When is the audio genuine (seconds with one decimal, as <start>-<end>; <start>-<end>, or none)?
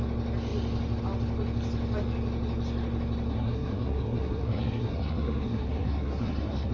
0.0-3.3